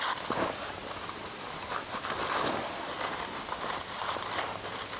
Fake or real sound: real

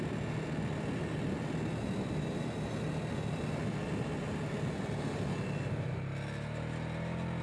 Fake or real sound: real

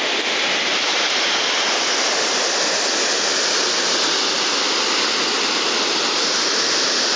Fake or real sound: real